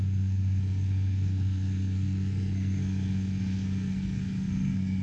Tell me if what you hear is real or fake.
fake